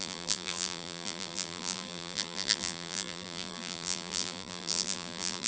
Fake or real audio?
fake